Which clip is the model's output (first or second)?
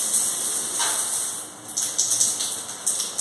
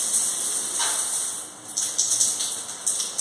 second